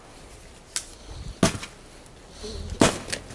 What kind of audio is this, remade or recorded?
recorded